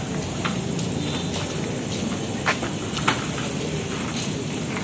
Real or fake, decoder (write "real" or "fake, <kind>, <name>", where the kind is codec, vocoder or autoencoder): real